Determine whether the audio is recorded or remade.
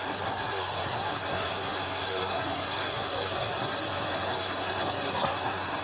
remade